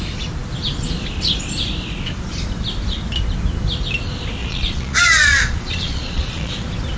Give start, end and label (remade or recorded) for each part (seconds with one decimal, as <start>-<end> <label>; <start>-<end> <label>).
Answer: 0.0-4.4 recorded; 4.4-6.5 remade; 6.5-7.0 recorded